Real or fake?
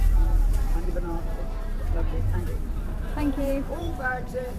fake